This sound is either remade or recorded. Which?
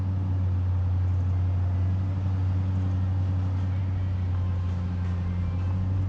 recorded